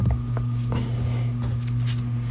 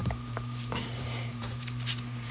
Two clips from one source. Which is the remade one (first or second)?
second